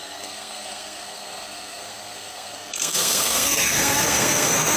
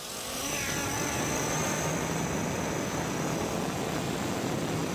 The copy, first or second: first